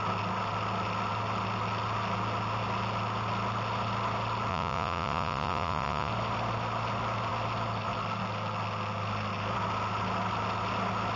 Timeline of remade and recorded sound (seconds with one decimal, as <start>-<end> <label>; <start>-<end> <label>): 0.0-4.5 recorded; 4.5-6.1 remade; 6.1-11.2 recorded